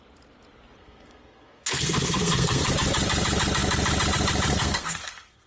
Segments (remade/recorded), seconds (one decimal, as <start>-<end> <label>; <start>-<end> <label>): 0.0-0.8 recorded; 0.8-2.7 remade; 2.7-4.5 recorded; 4.5-5.5 remade